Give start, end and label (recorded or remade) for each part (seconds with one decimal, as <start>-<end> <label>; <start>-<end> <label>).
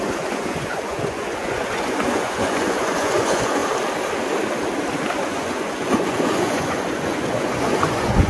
0.0-3.6 remade; 3.6-5.2 recorded; 5.2-8.3 remade